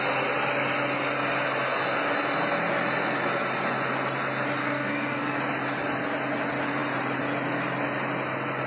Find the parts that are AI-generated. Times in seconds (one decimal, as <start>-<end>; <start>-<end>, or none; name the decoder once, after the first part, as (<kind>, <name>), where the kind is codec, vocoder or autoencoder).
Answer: 4.6-5.4 (codec, SNAC)